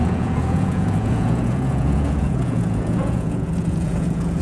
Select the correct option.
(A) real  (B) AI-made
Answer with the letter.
B